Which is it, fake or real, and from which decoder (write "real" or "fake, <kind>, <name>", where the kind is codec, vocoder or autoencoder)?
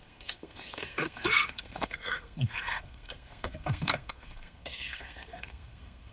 fake, codec, SNAC